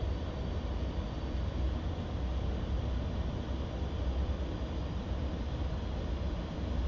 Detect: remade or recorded recorded